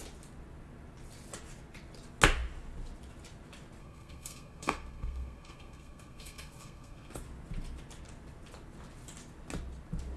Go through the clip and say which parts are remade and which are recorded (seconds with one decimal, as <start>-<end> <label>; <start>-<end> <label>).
0.0-3.8 recorded; 3.8-7.1 remade; 7.1-10.2 recorded